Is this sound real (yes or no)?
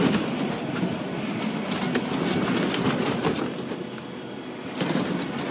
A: yes